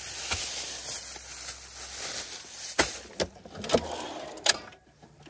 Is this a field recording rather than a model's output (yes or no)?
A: yes